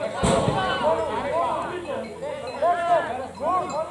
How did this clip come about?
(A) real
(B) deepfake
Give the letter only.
A